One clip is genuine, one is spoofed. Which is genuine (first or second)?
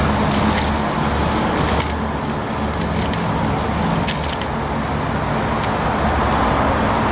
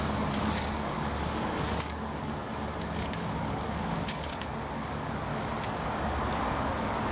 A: first